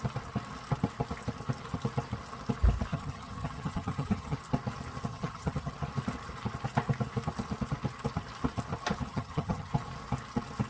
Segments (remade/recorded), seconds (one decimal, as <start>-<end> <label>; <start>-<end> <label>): 0.0-2.9 recorded; 2.9-4.4 remade; 4.4-5.1 recorded; 5.1-5.7 remade; 5.7-9.1 recorded; 9.1-9.7 remade; 9.7-10.7 recorded